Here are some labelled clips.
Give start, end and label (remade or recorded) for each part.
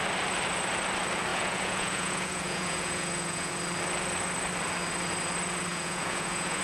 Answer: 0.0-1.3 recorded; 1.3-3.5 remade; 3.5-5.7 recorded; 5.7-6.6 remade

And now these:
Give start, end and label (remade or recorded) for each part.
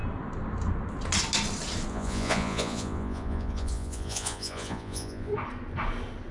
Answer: 0.0-1.9 recorded; 1.9-5.3 remade; 5.3-6.3 recorded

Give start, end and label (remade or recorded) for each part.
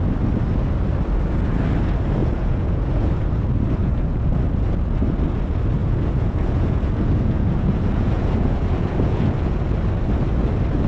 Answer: 0.0-2.2 recorded; 2.2-3.1 remade; 3.1-3.8 recorded; 3.8-4.3 remade; 4.3-5.8 recorded; 5.8-9.6 remade; 9.6-10.9 recorded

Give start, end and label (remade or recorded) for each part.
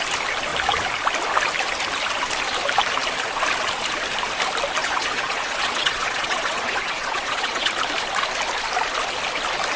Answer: 0.0-4.8 recorded; 4.8-7.7 remade; 7.7-9.8 recorded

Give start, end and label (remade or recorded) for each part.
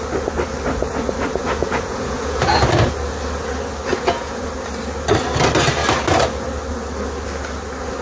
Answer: 0.0-1.4 recorded; 1.4-2.6 remade; 2.6-3.9 recorded; 3.9-4.4 remade; 4.4-8.0 recorded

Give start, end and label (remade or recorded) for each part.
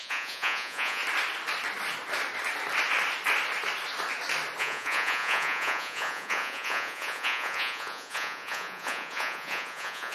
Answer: 0.0-1.0 remade; 1.0-4.6 recorded; 4.6-10.1 remade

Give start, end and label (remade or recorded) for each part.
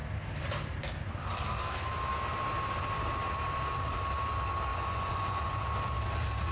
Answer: 0.0-4.7 recorded; 4.7-5.6 remade; 5.6-6.5 recorded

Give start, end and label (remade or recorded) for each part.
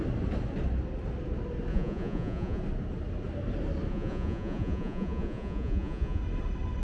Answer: 0.0-1.7 recorded; 1.7-2.6 remade; 2.6-3.9 recorded; 3.9-6.2 remade; 6.2-6.8 recorded